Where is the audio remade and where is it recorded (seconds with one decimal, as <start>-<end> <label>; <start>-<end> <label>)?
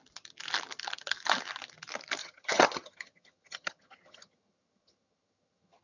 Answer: 0.0-2.2 recorded; 2.2-5.8 remade